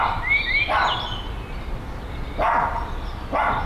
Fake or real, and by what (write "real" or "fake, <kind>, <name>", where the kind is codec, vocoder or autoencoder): real